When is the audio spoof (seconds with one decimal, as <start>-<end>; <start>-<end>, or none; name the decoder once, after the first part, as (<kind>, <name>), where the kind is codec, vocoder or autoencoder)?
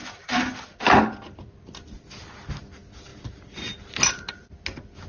none